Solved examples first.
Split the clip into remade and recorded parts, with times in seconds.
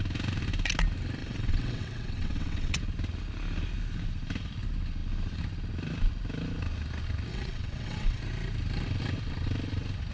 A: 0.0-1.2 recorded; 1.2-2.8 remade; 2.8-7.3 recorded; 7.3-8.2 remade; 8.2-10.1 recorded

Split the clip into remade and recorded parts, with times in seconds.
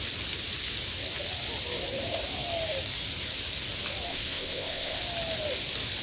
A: 0.0-4.1 recorded; 4.1-5.0 remade; 5.0-6.0 recorded